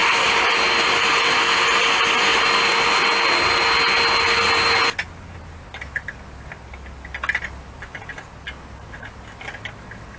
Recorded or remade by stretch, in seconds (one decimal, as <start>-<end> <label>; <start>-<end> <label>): 0.0-10.2 recorded

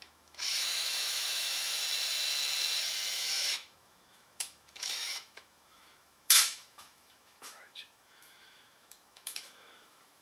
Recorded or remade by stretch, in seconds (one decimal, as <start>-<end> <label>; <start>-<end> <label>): 0.0-1.8 remade; 1.8-3.1 recorded; 3.1-10.2 remade

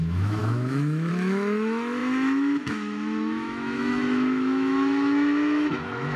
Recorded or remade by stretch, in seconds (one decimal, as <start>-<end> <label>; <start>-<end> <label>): 0.0-6.2 remade

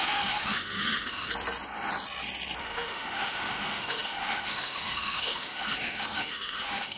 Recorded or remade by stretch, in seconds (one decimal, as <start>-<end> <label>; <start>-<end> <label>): 0.0-1.3 remade; 1.3-2.6 recorded; 2.6-7.0 remade

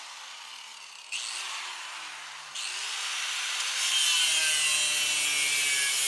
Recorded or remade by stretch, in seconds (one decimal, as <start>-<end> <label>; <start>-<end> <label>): 0.0-6.1 recorded

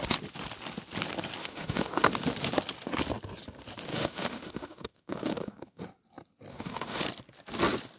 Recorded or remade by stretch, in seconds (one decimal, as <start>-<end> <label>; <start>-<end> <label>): 0.0-1.4 recorded; 1.4-2.1 remade; 2.1-3.9 recorded; 3.9-5.8 remade; 5.8-6.5 recorded; 6.5-7.0 remade; 7.0-8.0 recorded

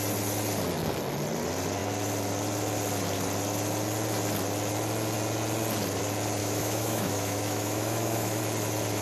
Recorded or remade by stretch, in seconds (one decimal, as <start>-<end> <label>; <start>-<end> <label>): 0.0-6.4 recorded; 6.4-8.4 remade; 8.4-9.0 recorded